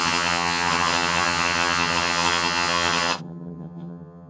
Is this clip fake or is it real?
fake